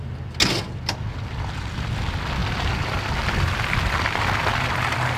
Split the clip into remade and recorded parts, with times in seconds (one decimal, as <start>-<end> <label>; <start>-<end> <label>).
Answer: 0.0-5.2 recorded

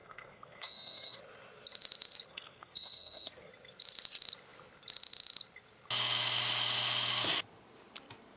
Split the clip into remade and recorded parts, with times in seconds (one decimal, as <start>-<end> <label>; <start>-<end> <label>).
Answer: 0.0-1.2 remade; 1.2-2.3 recorded; 2.3-3.5 remade; 3.5-8.4 recorded

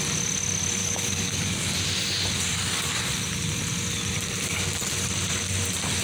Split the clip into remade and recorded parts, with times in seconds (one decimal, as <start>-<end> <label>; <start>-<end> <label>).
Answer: 0.0-0.8 recorded; 0.8-1.7 remade; 1.7-2.5 recorded; 2.5-3.1 remade; 3.1-6.0 recorded

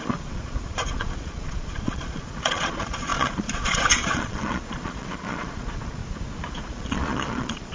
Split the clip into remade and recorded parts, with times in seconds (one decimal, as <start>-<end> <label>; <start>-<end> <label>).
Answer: 0.0-6.0 remade; 6.0-6.6 recorded; 6.6-7.7 remade

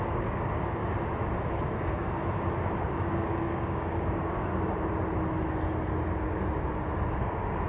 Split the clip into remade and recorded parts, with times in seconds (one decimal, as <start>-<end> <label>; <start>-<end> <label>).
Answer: 0.0-0.8 remade; 0.8-1.6 recorded; 1.6-2.2 remade; 2.2-2.9 recorded; 2.9-4.5 remade; 4.5-7.7 recorded

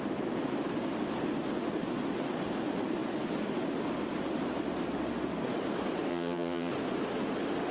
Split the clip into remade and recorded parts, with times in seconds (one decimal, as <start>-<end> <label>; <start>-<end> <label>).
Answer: 0.0-6.1 recorded; 6.1-6.7 remade; 6.7-7.7 recorded

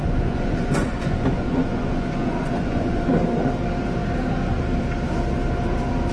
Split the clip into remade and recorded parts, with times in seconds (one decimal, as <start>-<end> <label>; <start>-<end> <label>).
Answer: 0.0-3.1 remade; 3.1-6.1 recorded